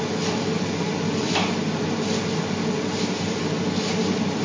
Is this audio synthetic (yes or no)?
no